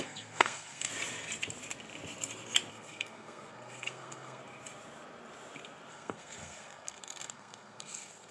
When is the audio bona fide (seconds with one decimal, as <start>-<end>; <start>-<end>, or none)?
0.9-2.7; 4.4-5.9